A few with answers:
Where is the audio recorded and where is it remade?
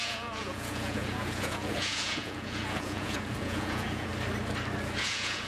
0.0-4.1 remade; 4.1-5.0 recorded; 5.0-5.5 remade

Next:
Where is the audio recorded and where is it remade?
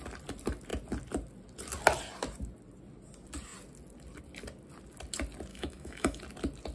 0.0-5.5 recorded; 5.5-6.2 remade; 6.2-6.7 recorded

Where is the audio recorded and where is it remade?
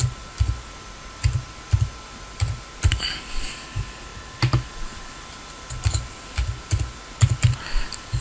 0.0-4.1 recorded; 4.1-7.5 remade; 7.5-8.2 recorded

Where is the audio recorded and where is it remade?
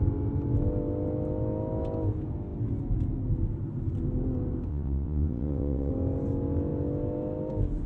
0.0-4.7 recorded; 4.7-5.9 remade; 5.9-7.9 recorded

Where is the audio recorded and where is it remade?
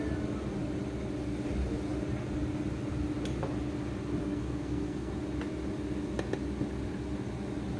0.0-4.2 recorded; 4.2-5.1 remade; 5.1-7.8 recorded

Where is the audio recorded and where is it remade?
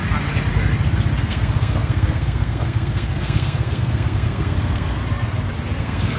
0.0-1.2 recorded; 1.2-5.0 remade; 5.0-5.8 recorded; 5.8-6.2 remade